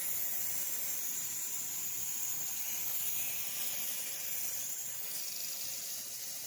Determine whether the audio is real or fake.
fake